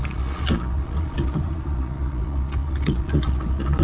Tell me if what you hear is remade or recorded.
remade